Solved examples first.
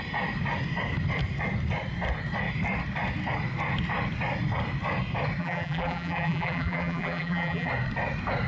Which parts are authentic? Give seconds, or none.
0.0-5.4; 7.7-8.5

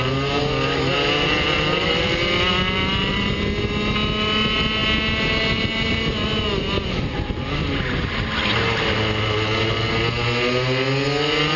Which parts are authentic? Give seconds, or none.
0.0-11.6

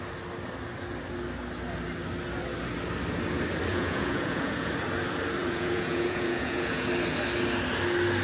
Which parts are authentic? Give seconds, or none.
0.0-3.7; 4.7-5.4; 6.9-8.2

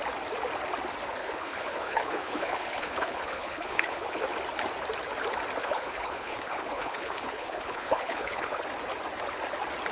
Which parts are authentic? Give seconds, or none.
0.0-1.2; 4.2-5.6; 8.6-9.9

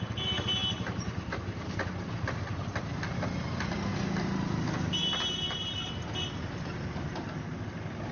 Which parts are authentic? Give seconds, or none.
0.0-0.6; 2.8-5.0; 5.8-8.1

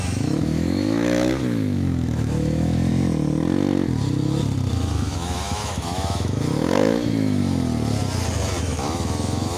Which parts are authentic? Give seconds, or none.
2.9-4.7; 7.4-8.6

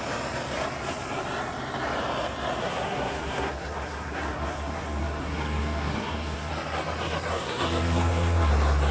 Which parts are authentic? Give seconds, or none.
0.0-2.6; 6.5-7.3; 8.5-8.9

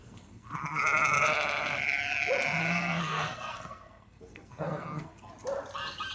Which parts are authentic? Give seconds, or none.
0.8-2.6; 5.3-6.1